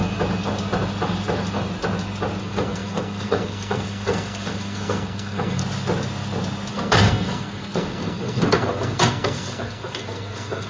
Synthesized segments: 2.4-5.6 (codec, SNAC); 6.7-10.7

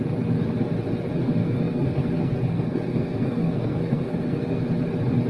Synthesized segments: 1.4-4.6 (codec, SNAC)